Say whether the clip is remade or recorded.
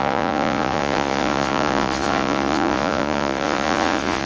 remade